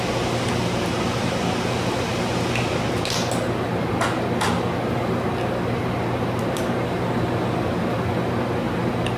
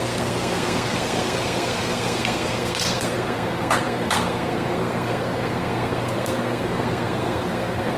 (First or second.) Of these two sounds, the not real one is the second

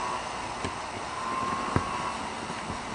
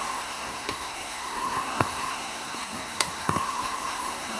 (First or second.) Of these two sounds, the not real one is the second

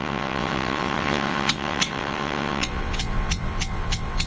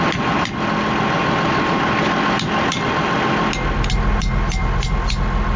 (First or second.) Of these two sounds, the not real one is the first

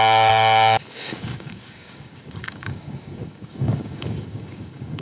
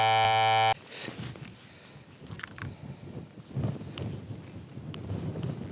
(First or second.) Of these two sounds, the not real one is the first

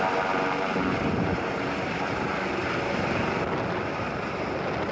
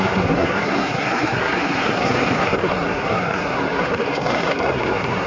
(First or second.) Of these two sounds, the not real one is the second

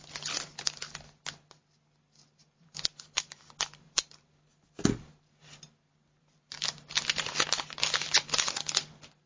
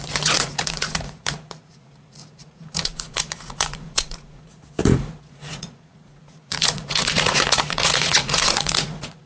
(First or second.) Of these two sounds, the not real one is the second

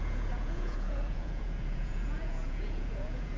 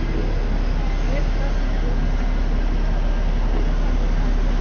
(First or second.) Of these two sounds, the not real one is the first